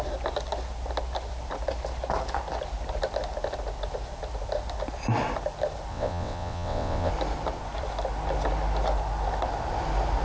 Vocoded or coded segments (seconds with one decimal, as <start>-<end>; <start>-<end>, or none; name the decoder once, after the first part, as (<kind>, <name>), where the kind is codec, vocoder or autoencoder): 5.9-7.1 (vocoder, WaveNeXt)